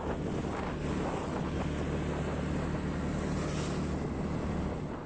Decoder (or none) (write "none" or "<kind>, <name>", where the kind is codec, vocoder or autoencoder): none